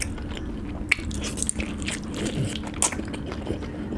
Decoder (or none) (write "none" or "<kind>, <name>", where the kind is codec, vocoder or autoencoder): none